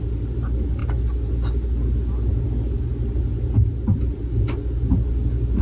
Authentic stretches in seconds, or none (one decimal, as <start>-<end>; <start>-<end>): 0.0-5.6